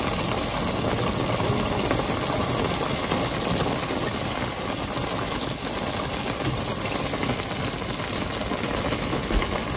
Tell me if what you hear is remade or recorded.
recorded